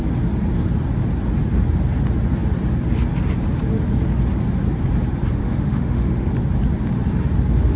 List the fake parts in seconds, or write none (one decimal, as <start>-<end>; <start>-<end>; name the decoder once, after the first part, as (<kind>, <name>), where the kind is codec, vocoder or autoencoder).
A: 5.4-6.3 (autoencoder, DAC-VAE)